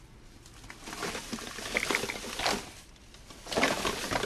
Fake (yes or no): no